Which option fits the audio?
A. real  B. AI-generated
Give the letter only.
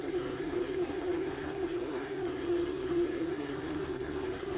B